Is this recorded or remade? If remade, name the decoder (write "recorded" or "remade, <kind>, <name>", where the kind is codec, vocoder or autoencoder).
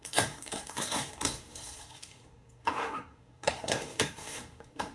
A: remade, codec, SNAC